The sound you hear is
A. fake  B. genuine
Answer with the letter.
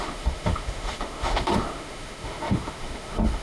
A